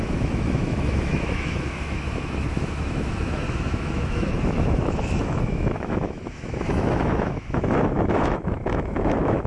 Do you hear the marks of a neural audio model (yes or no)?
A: yes